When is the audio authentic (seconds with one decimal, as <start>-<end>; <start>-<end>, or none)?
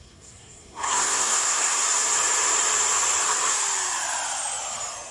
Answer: 1.8-5.1